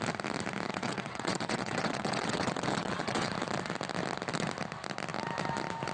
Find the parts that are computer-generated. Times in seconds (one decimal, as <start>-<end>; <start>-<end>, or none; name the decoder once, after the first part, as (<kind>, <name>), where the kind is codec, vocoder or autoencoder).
0.7-3.3 (vocoder, WaveNeXt)

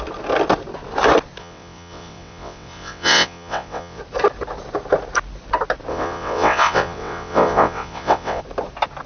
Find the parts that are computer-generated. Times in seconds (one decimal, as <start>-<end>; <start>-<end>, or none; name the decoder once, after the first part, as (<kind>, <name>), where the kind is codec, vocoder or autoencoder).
1.4-4.0 (vocoder, WaveNeXt); 5.9-8.4

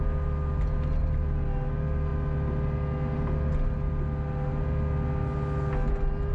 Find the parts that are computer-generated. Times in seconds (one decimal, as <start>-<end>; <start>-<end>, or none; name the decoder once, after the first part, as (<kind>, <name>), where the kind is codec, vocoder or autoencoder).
none

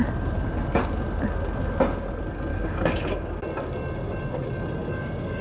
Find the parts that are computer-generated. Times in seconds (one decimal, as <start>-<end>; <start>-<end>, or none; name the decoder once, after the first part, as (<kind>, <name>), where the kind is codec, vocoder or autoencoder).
2.5-3.4 (codec, DAC); 4.8-5.4